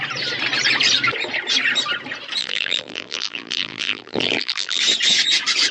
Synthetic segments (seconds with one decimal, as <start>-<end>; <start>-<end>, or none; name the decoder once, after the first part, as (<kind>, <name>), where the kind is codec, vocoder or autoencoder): 2.4-4.8 (vocoder, BigVGAN v2)